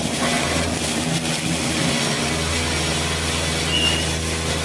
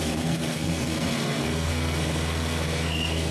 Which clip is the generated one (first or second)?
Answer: second